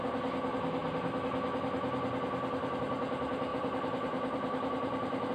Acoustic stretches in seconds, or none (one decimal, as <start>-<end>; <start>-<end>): 0.0-3.5